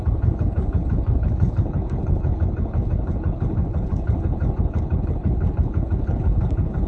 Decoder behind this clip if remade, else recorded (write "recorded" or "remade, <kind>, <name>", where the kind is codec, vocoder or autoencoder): remade, codec, HILCodec